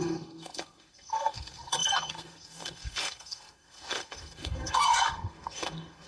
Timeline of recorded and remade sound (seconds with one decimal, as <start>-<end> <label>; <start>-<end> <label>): 0.0-6.1 remade